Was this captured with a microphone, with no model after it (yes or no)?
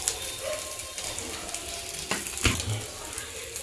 yes